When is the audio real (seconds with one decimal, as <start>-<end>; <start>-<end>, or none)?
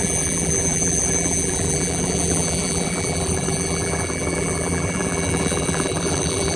none